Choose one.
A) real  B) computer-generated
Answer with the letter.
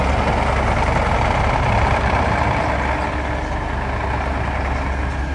A